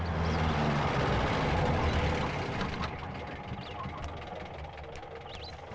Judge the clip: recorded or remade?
recorded